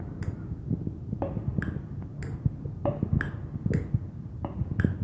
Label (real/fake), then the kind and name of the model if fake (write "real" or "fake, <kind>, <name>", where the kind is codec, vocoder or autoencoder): real